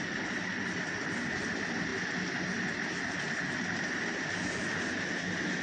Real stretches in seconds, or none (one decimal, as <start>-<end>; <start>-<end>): 0.0-5.6